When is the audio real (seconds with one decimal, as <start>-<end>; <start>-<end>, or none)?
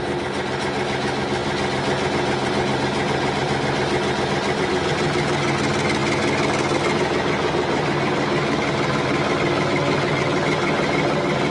0.0-11.5